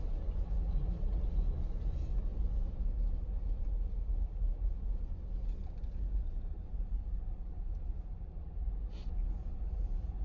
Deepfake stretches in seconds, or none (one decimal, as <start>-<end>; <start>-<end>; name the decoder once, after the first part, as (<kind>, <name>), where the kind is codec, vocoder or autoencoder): 2.3-2.8 (vocoder, BigVGAN v2); 5.6-8.9